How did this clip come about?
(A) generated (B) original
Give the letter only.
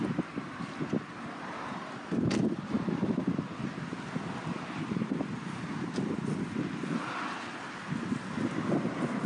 B